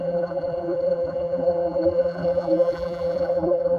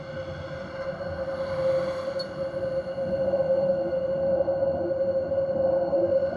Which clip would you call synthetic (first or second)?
first